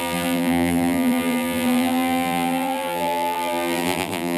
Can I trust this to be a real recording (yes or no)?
no